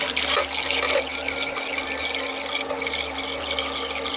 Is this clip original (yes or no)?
yes